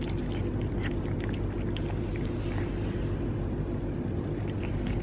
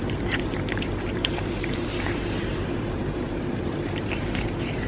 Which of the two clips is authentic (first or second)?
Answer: first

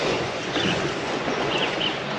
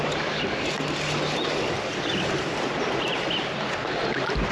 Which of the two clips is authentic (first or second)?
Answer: second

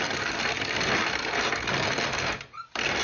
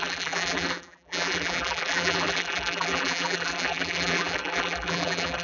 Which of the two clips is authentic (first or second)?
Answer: first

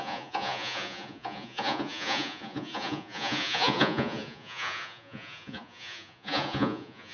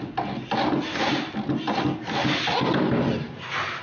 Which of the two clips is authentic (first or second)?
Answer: second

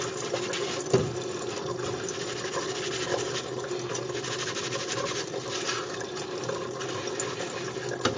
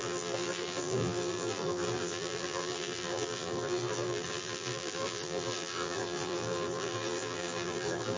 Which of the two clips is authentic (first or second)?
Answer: first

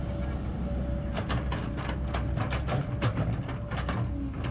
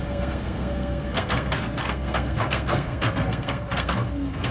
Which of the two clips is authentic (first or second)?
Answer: first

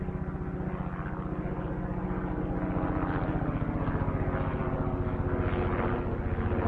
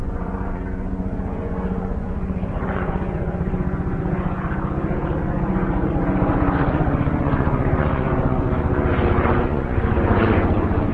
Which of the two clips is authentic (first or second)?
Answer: first